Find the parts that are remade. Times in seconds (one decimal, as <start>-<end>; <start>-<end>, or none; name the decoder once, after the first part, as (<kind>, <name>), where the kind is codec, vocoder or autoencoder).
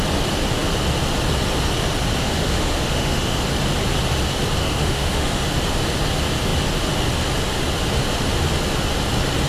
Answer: 2.2-3.4 (autoencoder, DAC-VAE); 4.6-5.4